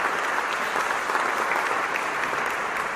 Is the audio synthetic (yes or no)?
no